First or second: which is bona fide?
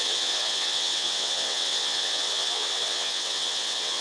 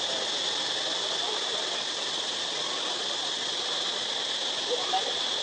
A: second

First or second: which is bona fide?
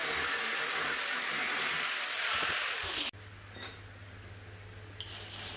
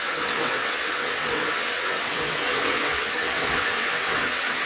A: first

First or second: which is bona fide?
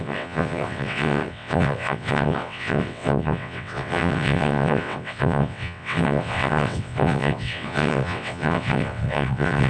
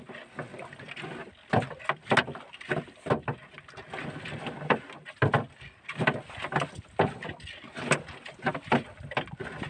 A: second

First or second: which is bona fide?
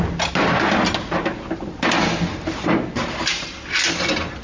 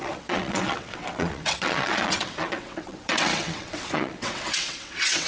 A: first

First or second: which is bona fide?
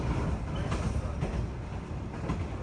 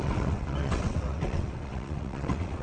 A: first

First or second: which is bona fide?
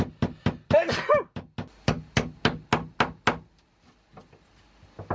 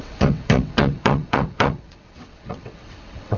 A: first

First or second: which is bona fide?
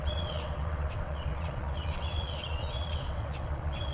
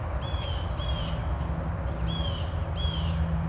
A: second